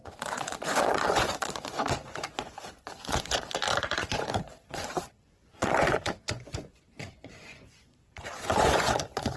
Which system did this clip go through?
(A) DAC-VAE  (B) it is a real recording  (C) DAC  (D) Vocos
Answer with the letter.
D